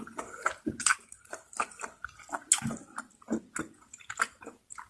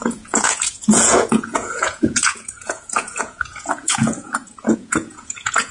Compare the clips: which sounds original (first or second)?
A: first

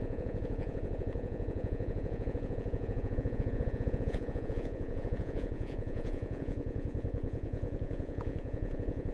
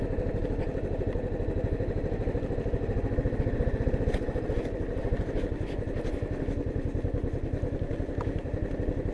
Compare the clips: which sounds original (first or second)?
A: second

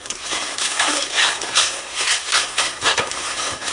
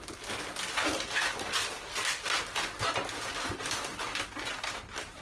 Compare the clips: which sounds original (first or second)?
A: second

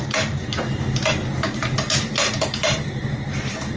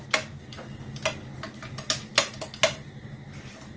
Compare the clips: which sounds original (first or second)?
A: second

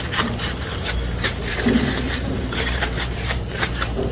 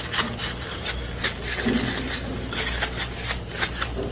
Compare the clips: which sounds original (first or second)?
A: second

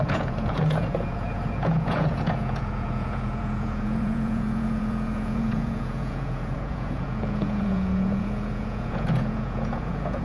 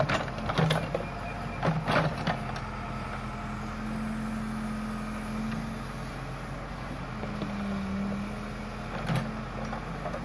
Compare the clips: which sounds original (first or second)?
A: second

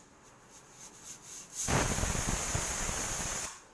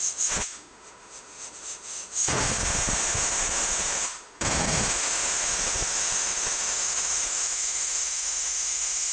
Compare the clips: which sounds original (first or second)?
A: first